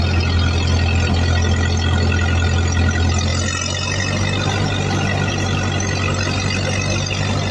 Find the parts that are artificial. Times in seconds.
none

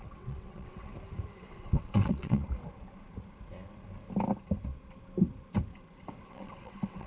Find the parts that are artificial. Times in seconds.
0.0-0.9 (vocoder, WaveNeXt); 1.5-2.4; 6.3-7.1

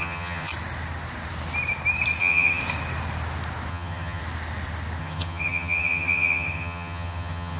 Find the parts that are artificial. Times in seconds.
0.0-0.5 (vocoder, HiFi-GAN); 2.2-2.6; 3.7-4.2; 5.0-7.6

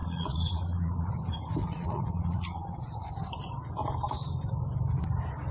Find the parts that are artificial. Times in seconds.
0.0-1.1 (vocoder, Vocos); 1.6-3.1

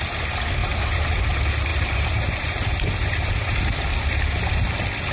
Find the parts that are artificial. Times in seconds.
0.6-1.2 (vocoder, BigVGAN v2); 1.7-3.7

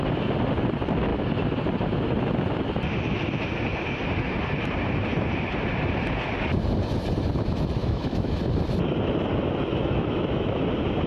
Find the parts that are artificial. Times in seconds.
7.8-8.3 (autoencoder, DAC-VAE); 9.7-10.6